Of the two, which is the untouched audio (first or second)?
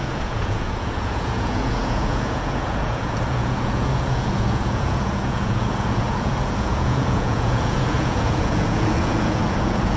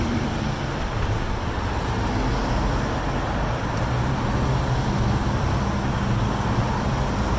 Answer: second